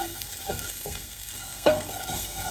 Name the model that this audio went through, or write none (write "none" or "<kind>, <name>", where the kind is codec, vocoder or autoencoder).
codec, SNAC